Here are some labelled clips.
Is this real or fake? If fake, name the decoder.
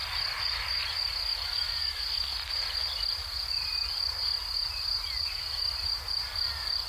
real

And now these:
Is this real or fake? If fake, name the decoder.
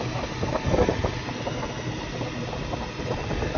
real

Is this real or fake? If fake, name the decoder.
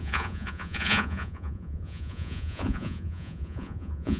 fake, vocoder, Vocos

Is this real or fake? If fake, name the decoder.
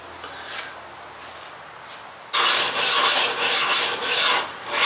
real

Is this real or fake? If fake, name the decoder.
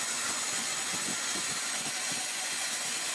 fake, vocoder, Vocos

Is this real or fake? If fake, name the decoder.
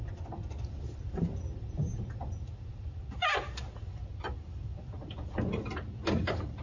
real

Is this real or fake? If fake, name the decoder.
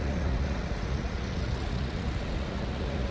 fake, vocoder, Vocos